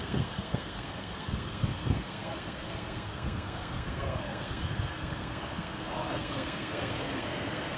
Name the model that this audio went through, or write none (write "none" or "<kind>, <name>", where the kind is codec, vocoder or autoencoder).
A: codec, SNAC